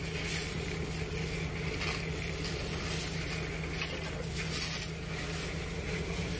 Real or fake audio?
real